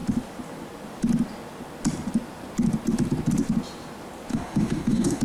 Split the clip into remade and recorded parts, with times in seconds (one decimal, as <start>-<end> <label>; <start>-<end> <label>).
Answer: 0.0-4.3 recorded; 4.3-5.2 remade